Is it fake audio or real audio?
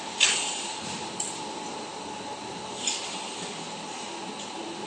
real